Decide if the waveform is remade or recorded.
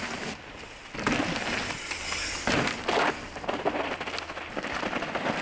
recorded